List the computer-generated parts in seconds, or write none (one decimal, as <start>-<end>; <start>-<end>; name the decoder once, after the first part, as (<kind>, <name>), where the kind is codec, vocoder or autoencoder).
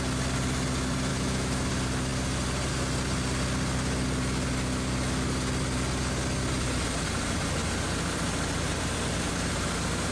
1.1-1.7 (autoencoder, DAC-VAE)